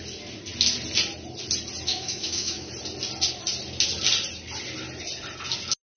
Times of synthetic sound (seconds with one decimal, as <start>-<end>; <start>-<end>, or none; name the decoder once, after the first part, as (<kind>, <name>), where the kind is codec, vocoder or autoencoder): 1.9-2.7 (autoencoder, DAC-VAE)